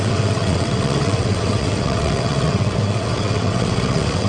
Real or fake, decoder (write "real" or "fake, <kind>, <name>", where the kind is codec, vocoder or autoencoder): fake, vocoder, WaveNeXt